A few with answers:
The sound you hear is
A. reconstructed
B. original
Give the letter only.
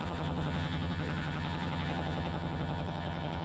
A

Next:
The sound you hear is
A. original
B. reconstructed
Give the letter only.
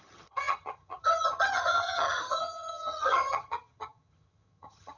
B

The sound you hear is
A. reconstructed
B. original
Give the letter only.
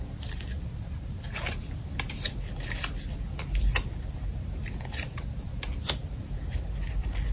B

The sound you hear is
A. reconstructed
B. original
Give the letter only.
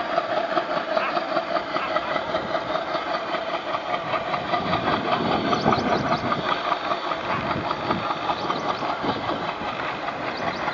B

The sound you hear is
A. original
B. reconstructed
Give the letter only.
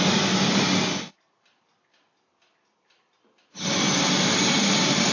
A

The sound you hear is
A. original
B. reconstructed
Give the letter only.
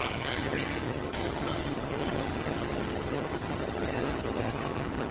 B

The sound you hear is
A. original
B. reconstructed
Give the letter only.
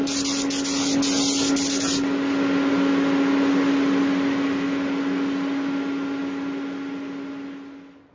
A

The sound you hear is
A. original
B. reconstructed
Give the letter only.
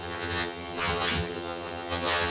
B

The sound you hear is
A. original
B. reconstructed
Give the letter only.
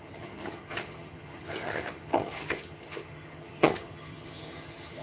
B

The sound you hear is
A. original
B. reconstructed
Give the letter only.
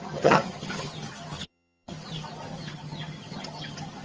B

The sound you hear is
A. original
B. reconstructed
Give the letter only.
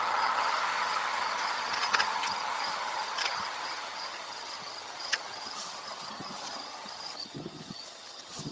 B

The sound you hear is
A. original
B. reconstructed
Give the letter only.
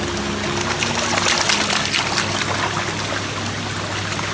A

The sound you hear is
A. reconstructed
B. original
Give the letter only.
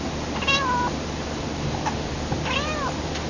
B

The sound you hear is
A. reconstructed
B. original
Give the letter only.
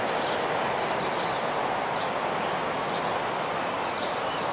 B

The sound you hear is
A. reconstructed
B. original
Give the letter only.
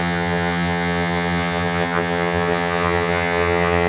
A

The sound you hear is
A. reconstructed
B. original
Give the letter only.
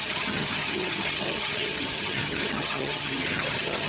A